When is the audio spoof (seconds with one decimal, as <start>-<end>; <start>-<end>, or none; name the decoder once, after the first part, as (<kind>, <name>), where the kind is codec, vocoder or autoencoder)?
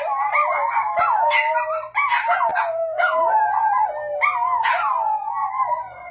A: 5.4-6.1 (vocoder, Vocos)